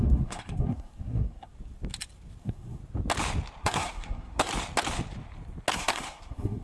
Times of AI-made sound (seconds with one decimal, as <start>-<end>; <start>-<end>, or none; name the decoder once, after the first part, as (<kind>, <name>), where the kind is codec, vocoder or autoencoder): 0.0-1.5 (codec, SNAC); 2.4-2.8; 3.6-4.5; 5.7-6.6